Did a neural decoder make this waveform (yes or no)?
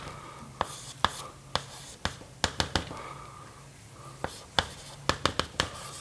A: no